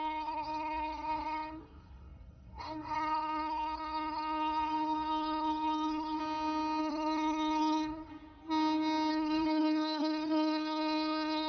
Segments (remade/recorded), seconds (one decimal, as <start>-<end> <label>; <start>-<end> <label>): 0.0-6.2 remade; 6.2-6.8 recorded; 6.8-8.1 remade; 8.1-9.1 recorded; 9.1-11.5 remade